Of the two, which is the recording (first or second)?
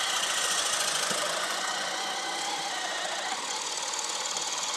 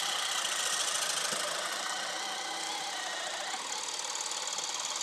second